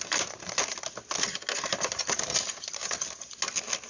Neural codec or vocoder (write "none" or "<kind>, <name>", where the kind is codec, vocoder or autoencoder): none